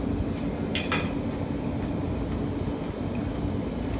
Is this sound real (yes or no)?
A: yes